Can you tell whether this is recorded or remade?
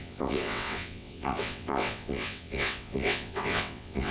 remade